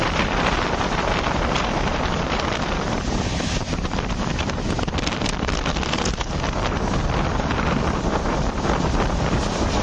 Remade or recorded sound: remade